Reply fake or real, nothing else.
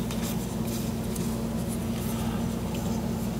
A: real